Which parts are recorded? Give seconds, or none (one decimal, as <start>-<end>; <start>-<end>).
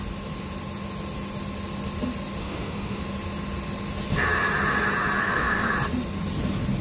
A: 0.0-2.4; 3.0-5.2; 5.7-6.8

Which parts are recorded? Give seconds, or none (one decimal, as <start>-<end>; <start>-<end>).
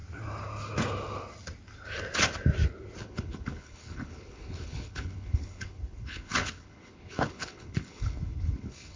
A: 0.0-3.0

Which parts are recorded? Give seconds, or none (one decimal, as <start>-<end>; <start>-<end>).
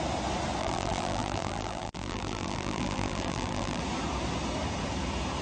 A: 0.0-0.6; 3.8-5.4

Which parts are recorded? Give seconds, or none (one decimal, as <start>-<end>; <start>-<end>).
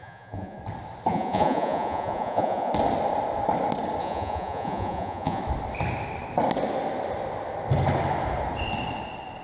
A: 0.6-1.1; 2.7-4.0; 5.4-9.4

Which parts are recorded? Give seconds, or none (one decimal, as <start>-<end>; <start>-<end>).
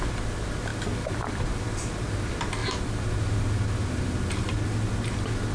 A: 0.0-5.5